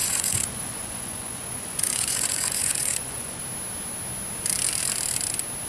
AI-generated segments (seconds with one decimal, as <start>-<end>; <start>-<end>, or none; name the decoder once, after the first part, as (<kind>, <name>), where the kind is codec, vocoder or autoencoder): 0.0-3.4 (vocoder, Vocos)